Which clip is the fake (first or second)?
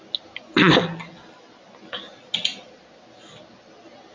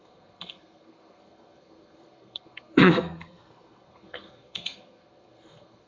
second